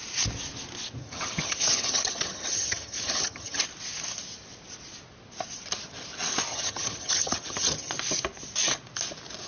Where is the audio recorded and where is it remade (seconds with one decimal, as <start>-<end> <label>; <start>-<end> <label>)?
0.0-1.0 recorded; 1.0-3.6 remade; 3.6-6.5 recorded; 6.5-7.9 remade; 7.9-9.5 recorded